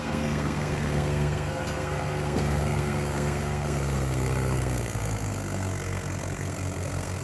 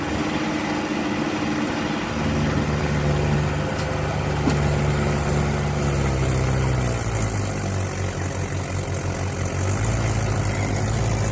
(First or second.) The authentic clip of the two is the second